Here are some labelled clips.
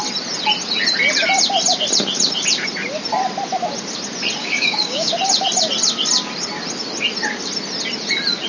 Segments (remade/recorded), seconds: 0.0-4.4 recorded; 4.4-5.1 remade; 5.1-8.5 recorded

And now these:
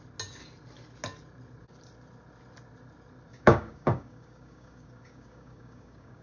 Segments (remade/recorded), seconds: 0.0-3.3 recorded; 3.3-6.2 remade